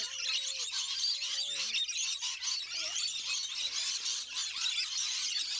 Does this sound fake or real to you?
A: fake